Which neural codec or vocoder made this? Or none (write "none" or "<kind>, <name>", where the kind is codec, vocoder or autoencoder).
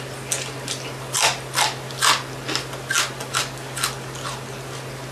none